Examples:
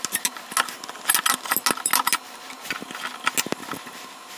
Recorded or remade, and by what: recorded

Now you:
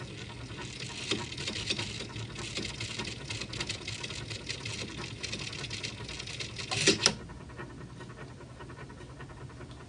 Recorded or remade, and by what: recorded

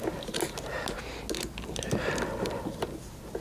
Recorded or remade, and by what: recorded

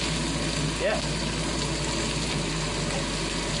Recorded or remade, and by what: recorded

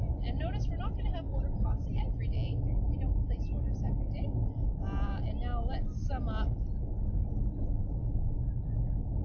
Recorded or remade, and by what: recorded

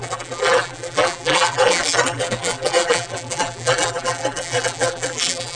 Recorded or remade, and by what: remade, vocoder, BigVGAN v2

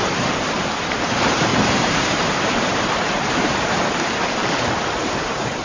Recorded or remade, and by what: remade, vocoder, BigVGAN v2